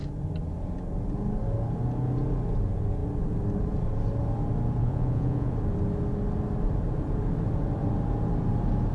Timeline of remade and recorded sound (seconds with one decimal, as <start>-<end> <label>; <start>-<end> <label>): 0.0-4.8 recorded; 4.8-5.5 remade; 5.5-8.9 recorded